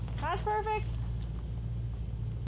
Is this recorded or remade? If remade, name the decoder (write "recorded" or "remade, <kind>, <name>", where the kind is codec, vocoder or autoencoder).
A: recorded